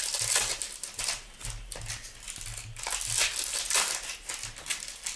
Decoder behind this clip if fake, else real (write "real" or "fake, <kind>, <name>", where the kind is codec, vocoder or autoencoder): real